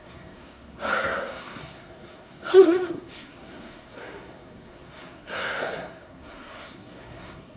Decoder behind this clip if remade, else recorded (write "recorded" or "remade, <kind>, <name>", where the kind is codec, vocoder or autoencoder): remade, codec, SNAC